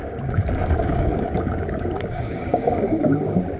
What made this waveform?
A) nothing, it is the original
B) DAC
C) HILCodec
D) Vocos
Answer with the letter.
B